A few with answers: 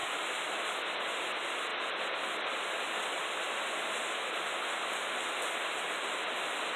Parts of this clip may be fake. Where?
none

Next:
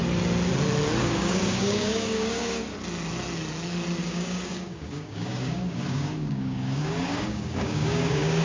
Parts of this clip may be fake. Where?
1.0-2.6 (codec, DAC); 4.0-8.4

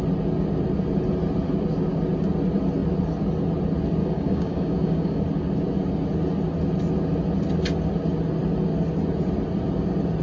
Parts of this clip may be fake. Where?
4.0-5.2 (codec, DAC)

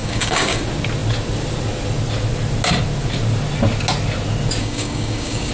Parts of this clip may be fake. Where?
0.0-0.6 (codec, DAC); 4.6-5.5

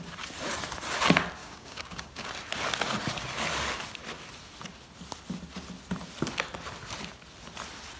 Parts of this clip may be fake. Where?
1.4-2.3 (codec, DAC)

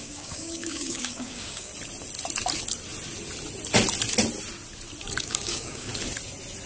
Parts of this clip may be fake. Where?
0.0-1.7 (codec, DAC); 5.2-5.9